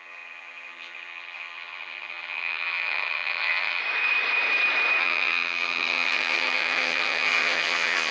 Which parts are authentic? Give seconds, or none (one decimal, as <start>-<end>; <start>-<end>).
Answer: 3.8-5.0